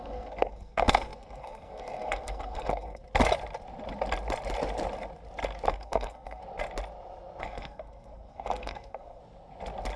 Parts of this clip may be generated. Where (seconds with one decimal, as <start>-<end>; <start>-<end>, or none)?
0.0-3.0; 5.7-6.4; 7.4-9.2